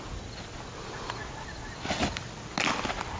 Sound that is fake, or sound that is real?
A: real